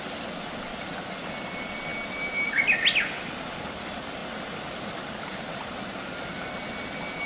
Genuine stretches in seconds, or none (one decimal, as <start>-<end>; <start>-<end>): 0.0-7.3

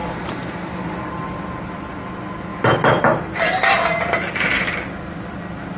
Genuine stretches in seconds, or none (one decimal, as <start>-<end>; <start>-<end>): 0.0-2.5; 3.0-5.8

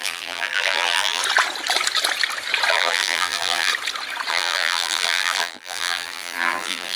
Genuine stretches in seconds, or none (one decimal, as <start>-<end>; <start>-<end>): 1.2-2.7; 3.7-4.3

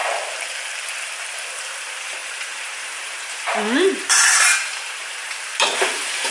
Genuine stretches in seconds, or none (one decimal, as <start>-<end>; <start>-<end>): 0.0-1.5

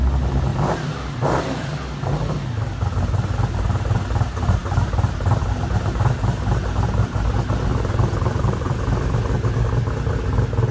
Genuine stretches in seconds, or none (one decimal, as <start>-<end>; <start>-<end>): 0.0-0.5; 1.4-4.6; 7.3-7.7; 9.2-10.7

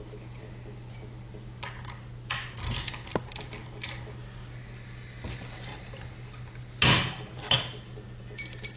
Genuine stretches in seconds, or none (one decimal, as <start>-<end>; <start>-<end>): 0.0-8.8